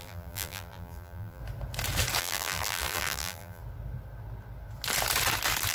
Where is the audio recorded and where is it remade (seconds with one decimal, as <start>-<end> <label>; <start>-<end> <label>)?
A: 0.0-1.4 remade; 1.4-2.2 recorded; 2.2-3.6 remade; 3.6-5.7 recorded

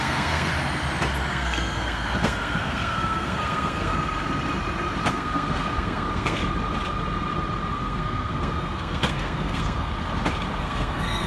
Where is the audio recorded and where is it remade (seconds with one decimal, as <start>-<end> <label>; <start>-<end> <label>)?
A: 0.0-0.5 remade; 0.5-1.3 recorded; 1.3-3.9 remade; 3.9-5.1 recorded; 5.1-6.4 remade; 6.4-7.7 recorded; 7.7-9.9 remade; 9.9-10.6 recorded; 10.6-11.3 remade

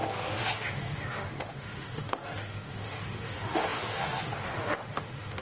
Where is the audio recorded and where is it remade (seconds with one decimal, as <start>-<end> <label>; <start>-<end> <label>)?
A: 0.0-5.4 remade